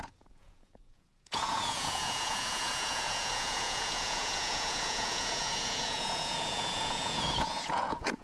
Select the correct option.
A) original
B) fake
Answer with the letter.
B